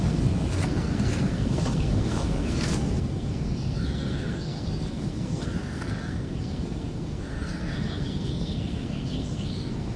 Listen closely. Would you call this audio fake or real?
fake